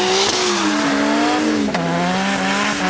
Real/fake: real